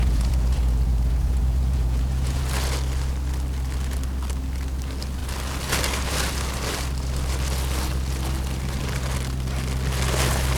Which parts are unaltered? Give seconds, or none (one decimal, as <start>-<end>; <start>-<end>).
2.4-10.6

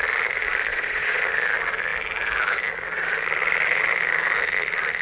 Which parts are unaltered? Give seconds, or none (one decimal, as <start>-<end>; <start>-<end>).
0.0-0.7; 1.2-5.0

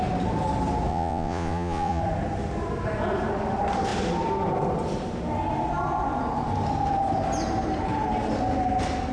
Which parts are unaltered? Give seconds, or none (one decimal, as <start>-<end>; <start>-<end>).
0.0-0.9; 2.0-9.1